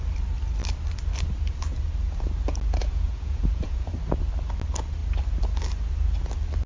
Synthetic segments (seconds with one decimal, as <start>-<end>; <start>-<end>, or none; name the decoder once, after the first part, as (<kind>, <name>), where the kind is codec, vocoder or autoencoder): 2.8-3.9 (vocoder, Vocos)